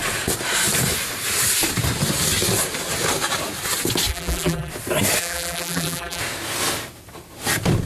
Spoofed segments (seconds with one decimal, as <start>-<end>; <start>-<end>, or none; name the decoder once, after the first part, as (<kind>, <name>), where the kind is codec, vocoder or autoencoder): 4.1-4.7 (vocoder, BigVGAN v2); 5.2-6.2